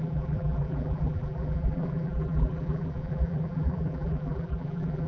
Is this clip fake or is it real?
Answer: fake